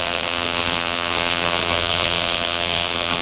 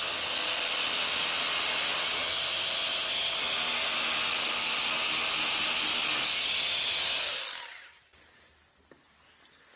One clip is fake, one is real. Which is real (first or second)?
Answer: second